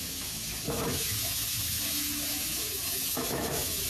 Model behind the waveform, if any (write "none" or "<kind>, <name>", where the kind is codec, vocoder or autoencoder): autoencoder, DAC-VAE